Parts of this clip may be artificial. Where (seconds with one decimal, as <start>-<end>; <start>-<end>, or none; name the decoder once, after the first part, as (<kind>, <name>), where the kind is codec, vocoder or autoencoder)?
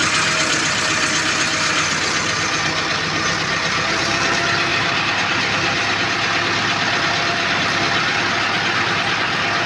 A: 4.7-9.2 (vocoder, BigVGAN v2)